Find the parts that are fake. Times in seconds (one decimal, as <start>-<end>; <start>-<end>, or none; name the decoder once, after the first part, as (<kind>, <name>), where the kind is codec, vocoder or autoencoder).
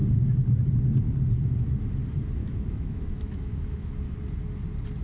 2.4-3.9 (autoencoder, DAC-VAE)